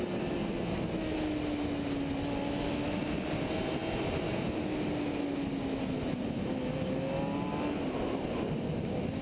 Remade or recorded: recorded